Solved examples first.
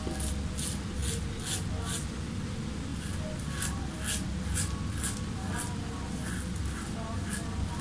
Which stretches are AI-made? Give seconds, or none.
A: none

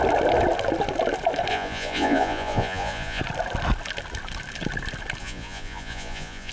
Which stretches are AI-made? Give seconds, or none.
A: 1.5-3.2 (vocoder, Vocos); 5.2-6.5

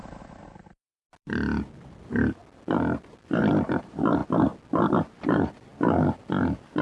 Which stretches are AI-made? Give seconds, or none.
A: none

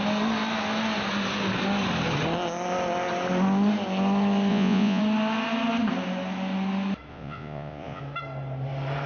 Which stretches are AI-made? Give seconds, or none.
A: 4.5-5.0 (vocoder, Vocos); 7.1-8.0

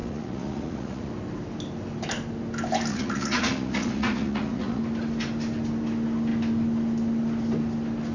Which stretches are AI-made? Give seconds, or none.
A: 0.0-1.1 (vocoder, Vocos); 2.9-4.8

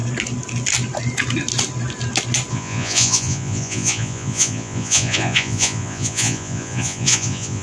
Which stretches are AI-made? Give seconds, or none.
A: 2.5-7.6 (vocoder, Vocos)